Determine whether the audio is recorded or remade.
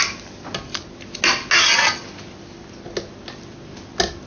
recorded